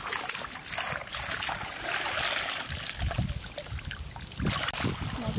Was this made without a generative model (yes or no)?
yes